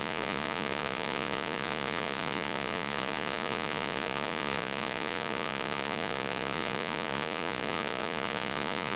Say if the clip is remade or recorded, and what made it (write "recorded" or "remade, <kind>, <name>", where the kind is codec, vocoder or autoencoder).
remade, vocoder, Vocos